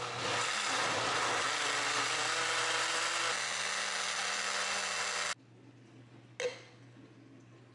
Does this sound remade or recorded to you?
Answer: recorded